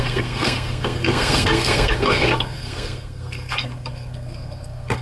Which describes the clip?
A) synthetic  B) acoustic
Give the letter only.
A